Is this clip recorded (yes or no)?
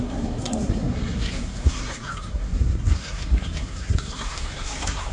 no